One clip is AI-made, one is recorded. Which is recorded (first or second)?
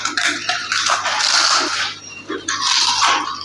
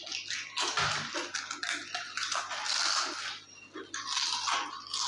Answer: second